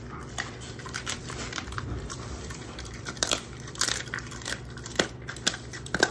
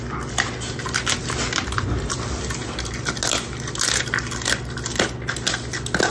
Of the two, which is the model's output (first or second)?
first